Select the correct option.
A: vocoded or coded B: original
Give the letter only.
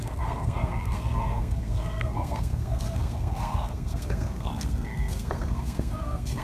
A